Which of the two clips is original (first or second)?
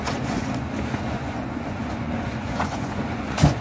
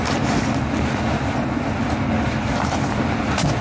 second